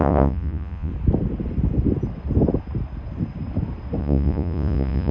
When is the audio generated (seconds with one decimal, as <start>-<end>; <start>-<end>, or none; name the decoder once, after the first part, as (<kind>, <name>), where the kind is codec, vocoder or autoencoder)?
0.0-0.9 (vocoder, Vocos); 4.0-5.1